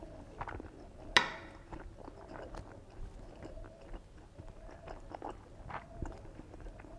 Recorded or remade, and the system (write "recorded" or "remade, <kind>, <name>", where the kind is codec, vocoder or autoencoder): recorded